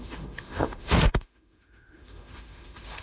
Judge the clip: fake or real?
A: fake